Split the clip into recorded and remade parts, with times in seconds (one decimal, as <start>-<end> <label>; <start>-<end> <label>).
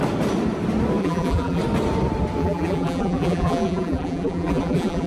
0.0-1.0 recorded; 1.0-1.6 remade; 1.6-2.4 recorded; 2.4-5.1 remade